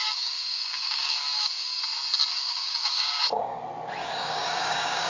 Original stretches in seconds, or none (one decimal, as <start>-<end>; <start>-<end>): 1.8-2.3; 3.6-4.0